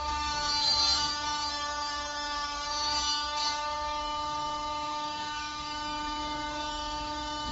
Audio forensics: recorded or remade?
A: remade